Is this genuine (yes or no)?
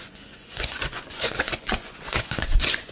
no